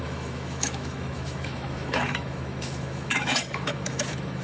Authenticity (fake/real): fake